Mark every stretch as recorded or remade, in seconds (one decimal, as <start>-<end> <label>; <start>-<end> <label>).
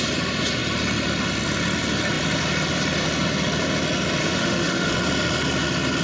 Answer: 0.0-4.2 recorded; 4.2-4.9 remade; 4.9-6.0 recorded